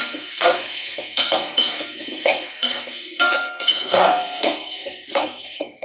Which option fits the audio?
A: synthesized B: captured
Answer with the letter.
A